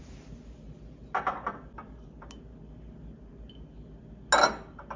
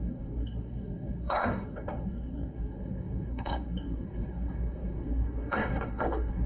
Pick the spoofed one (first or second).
second